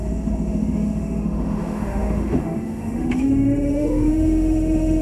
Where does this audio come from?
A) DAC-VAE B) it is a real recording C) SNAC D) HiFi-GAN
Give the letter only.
A